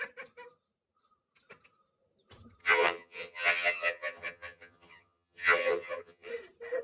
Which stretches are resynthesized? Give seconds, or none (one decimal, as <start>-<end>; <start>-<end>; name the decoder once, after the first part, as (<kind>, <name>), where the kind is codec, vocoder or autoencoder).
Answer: 2.6-6.3 (vocoder, HiFi-GAN)